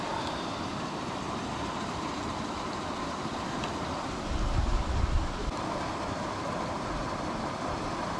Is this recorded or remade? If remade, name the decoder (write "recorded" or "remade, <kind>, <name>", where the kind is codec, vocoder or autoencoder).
remade, vocoder, BigVGAN v2